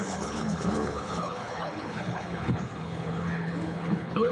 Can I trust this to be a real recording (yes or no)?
no